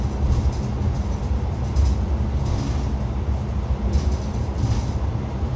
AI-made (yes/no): no